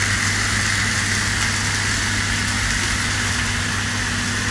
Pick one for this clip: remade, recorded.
recorded